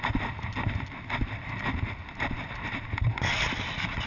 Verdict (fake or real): real